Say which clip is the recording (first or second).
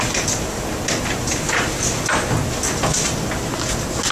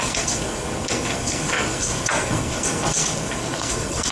first